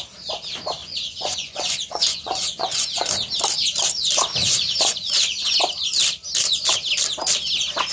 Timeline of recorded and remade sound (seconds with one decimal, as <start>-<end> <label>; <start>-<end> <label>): 0.0-0.8 recorded; 0.8-3.1 remade; 3.1-4.4 recorded; 4.4-5.4 remade; 5.4-7.9 recorded